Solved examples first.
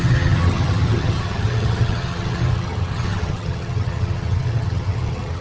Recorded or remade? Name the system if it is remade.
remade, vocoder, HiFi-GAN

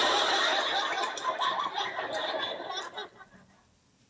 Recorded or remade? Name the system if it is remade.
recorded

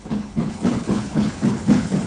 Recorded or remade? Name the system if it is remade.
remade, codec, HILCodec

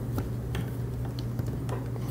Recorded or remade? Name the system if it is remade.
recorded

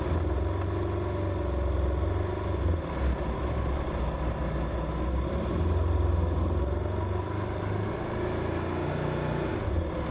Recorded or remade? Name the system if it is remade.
recorded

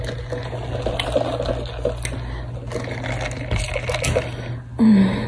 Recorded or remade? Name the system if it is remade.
recorded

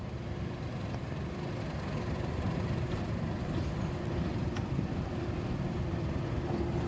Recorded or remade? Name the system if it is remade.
recorded